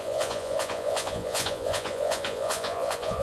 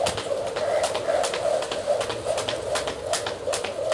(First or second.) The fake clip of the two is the first